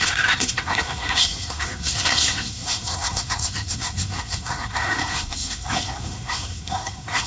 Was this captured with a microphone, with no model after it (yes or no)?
no